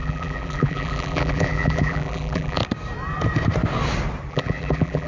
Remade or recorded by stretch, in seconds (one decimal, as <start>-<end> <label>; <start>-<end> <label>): 0.0-2.6 remade; 2.6-4.3 recorded; 4.3-5.1 remade